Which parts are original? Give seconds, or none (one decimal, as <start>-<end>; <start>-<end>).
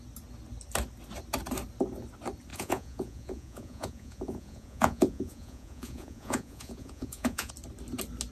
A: 0.0-2.5; 7.5-8.3